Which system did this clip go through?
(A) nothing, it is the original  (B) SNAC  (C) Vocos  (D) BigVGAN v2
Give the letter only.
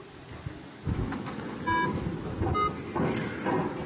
A